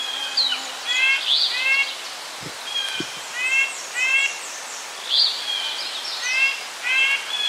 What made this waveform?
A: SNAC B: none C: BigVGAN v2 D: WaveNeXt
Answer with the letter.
B